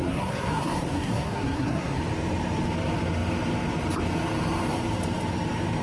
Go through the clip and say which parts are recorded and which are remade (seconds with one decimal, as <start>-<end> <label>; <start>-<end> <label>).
0.0-2.0 remade; 2.0-5.8 recorded